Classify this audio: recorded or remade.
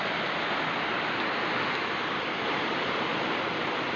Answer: recorded